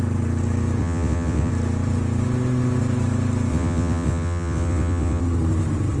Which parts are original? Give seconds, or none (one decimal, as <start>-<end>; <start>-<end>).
0.0-0.8; 1.5-3.5; 5.2-6.0